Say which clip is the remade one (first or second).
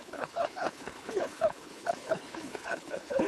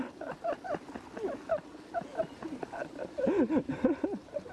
first